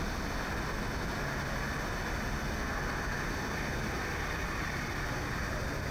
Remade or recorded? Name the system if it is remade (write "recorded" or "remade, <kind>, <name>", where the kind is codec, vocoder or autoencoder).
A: recorded